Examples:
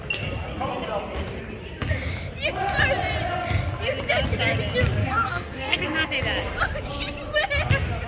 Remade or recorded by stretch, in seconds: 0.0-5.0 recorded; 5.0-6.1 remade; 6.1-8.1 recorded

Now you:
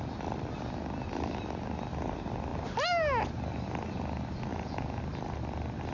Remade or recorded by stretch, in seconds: 0.0-4.5 recorded; 4.5-5.0 remade; 5.0-5.9 recorded

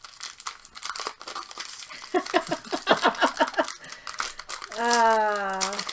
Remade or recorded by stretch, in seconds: 0.0-5.9 recorded

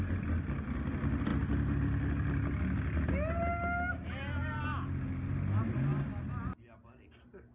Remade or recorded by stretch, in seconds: 0.0-7.5 recorded

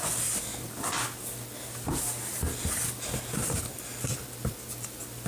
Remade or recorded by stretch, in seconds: 0.0-5.3 recorded

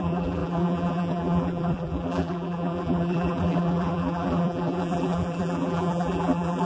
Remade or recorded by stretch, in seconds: 0.0-6.7 remade

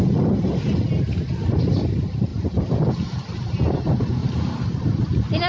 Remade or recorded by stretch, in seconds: 0.0-5.5 recorded

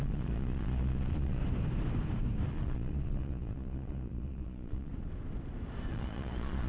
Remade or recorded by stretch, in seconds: 0.0-1.4 remade; 1.4-2.5 recorded; 2.5-4.9 remade; 4.9-5.9 recorded; 5.9-6.7 remade